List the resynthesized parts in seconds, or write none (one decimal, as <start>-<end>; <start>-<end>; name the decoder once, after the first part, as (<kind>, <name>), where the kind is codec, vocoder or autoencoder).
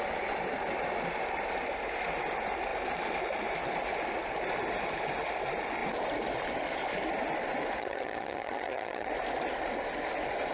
7.8-9.1 (vocoder, HiFi-GAN)